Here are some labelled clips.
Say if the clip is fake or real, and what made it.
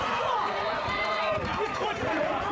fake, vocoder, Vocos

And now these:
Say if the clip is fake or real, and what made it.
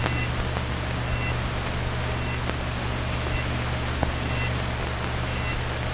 real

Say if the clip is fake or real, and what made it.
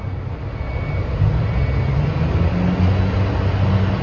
real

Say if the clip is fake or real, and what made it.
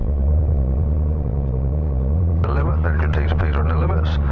fake, vocoder, Vocos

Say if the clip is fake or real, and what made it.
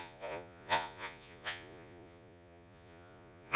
fake, vocoder, Vocos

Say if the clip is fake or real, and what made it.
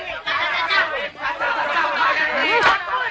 real